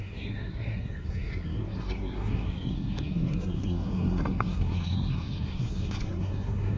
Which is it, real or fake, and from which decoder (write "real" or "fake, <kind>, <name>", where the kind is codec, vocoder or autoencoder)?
fake, codec, SNAC